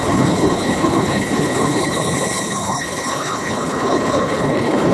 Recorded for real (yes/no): no